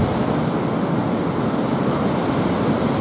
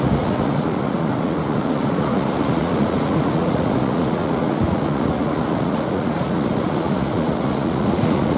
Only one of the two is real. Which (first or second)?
first